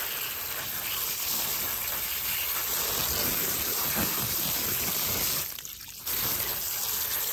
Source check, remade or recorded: recorded